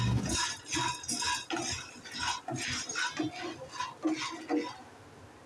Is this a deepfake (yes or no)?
no